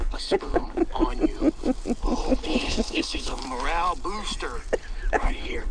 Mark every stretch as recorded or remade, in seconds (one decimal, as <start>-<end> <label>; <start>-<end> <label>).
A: 0.0-0.8 remade; 0.8-2.3 recorded; 2.3-3.4 remade; 3.4-5.1 recorded; 5.1-5.7 remade